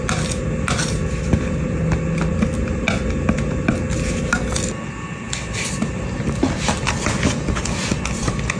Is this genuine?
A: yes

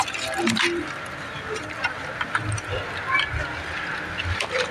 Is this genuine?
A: yes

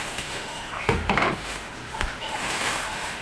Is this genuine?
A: no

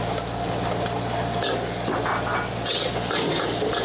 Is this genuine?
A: yes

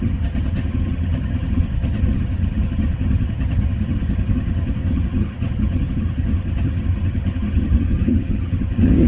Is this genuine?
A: no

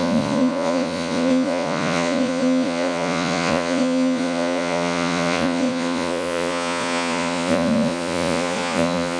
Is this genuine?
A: no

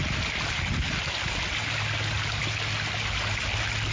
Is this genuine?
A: yes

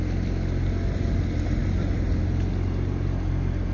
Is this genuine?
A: yes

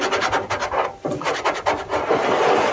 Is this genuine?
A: yes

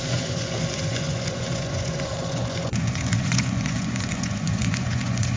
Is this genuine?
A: no